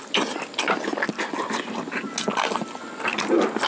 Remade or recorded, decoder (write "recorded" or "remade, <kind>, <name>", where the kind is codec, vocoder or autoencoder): recorded